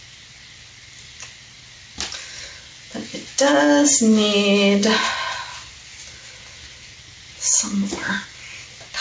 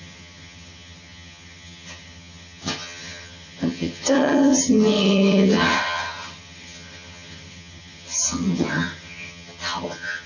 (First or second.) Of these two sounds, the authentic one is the first